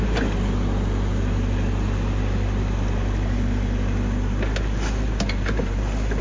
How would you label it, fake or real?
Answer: real